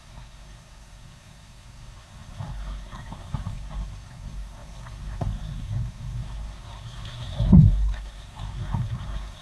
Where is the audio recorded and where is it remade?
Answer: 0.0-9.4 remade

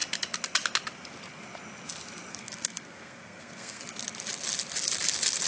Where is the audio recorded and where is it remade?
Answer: 0.0-2.3 recorded; 2.3-3.8 remade; 3.8-5.5 recorded

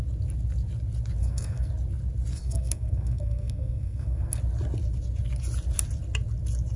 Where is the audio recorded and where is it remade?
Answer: 0.0-1.2 recorded; 1.2-1.7 remade; 1.7-2.3 recorded; 2.3-4.4 remade; 4.4-6.8 recorded

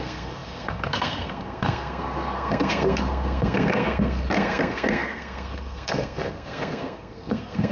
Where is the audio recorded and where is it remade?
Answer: 0.0-7.7 remade

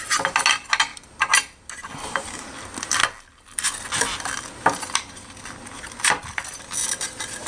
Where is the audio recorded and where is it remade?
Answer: 0.0-7.5 recorded

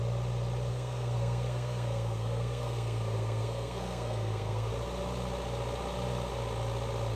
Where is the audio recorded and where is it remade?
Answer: 0.0-0.7 recorded; 0.7-4.7 remade; 4.7-7.2 recorded